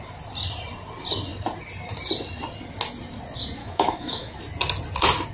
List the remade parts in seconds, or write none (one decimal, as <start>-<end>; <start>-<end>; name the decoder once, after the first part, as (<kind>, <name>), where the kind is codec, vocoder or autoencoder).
3.6-4.4 (autoencoder, DAC-VAE)